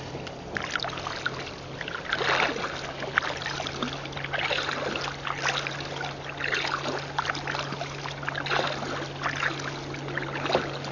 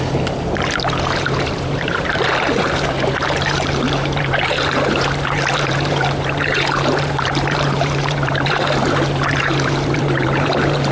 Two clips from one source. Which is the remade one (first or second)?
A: second